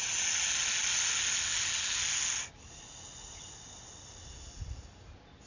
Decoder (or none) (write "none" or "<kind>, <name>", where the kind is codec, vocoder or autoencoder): none